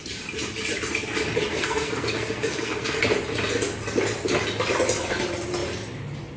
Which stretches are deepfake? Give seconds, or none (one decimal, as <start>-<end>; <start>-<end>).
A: 1.5-3.0